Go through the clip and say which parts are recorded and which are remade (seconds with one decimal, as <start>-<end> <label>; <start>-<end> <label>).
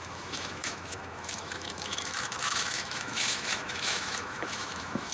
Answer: 0.0-5.1 remade